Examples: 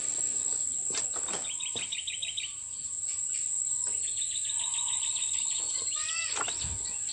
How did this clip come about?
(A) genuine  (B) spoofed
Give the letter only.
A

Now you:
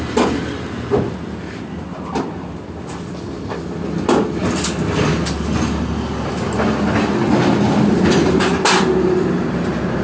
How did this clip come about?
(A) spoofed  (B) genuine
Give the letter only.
B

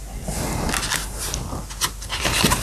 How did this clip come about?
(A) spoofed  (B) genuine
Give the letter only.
B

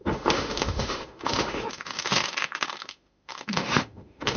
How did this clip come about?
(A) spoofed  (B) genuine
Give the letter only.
A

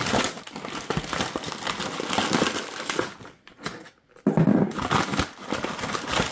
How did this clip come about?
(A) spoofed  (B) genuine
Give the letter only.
B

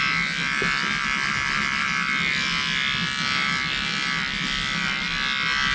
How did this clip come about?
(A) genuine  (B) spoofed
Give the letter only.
A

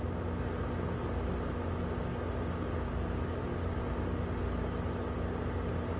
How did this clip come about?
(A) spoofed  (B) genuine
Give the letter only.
B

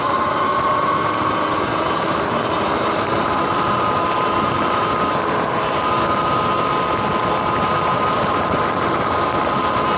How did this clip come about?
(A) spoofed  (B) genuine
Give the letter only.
B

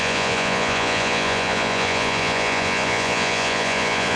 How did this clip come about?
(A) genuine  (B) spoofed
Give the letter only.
B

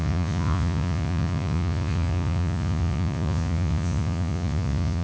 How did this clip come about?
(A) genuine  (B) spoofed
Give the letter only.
B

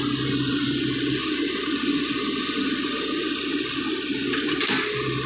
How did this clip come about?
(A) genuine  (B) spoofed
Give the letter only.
B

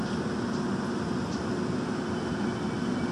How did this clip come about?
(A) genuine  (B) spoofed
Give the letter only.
A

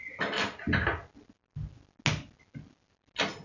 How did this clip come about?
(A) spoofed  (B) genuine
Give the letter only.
B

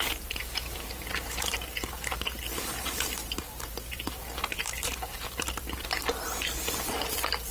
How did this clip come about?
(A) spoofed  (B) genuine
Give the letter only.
A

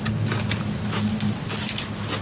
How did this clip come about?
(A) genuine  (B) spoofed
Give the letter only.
A